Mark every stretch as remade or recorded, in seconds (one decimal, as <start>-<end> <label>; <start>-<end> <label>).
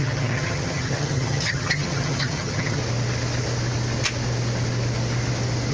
0.0-2.8 remade; 2.8-5.7 recorded